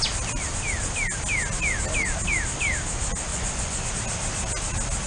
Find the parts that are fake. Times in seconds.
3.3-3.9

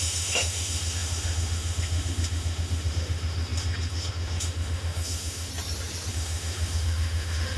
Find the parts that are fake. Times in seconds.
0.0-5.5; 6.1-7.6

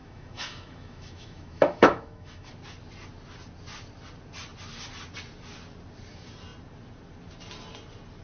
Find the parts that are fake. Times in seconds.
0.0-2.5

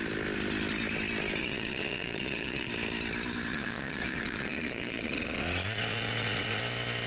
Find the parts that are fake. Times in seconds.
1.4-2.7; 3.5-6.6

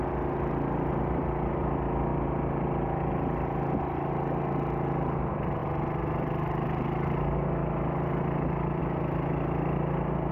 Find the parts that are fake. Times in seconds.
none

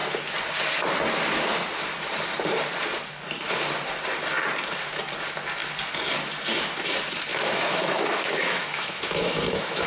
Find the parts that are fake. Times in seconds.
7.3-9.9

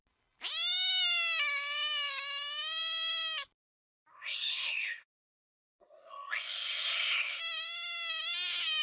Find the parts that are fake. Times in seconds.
4.1-7.4

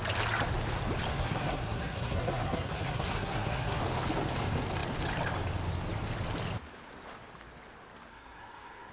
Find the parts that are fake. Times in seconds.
1.1-3.8; 8.1-8.9